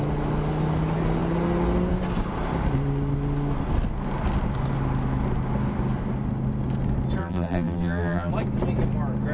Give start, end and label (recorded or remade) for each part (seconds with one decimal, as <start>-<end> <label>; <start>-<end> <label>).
0.0-7.2 recorded; 7.2-8.3 remade; 8.3-9.3 recorded